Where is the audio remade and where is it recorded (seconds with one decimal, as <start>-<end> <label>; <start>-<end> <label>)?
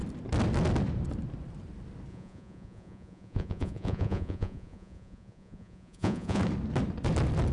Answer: 0.0-2.1 recorded; 2.1-6.4 remade; 6.4-7.5 recorded